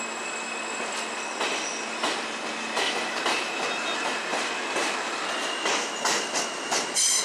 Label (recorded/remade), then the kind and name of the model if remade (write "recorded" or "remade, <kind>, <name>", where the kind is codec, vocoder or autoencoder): recorded